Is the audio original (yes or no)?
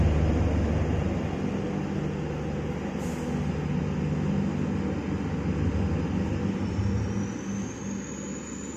yes